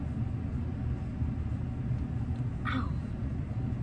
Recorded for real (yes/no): yes